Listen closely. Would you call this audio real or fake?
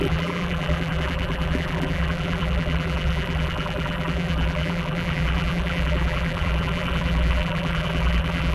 fake